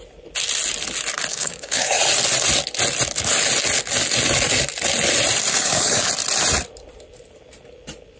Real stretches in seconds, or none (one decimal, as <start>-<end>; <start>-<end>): 0.0-1.3; 2.0-5.5; 6.1-8.2